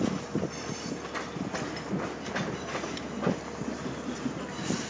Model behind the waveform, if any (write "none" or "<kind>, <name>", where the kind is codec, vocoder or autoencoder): vocoder, BigVGAN v2